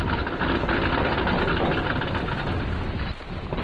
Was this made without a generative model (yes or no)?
yes